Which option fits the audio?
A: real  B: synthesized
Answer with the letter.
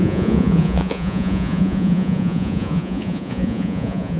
B